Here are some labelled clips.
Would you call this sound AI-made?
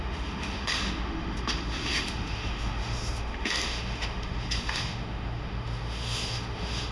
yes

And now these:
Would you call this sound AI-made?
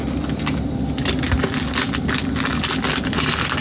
no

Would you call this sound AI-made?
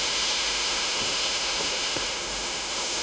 yes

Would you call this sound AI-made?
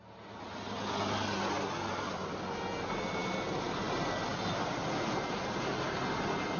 no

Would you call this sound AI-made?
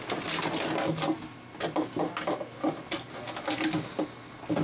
no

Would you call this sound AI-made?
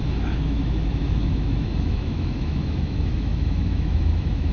yes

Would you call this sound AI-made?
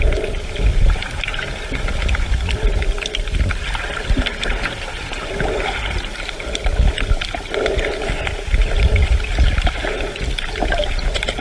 no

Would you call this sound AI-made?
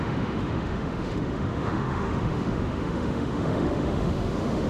yes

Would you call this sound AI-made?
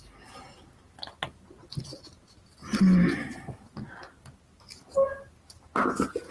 no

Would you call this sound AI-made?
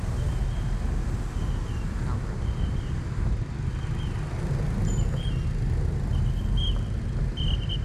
no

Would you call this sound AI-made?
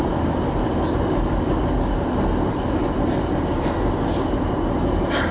no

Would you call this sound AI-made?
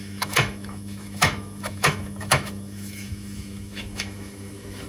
yes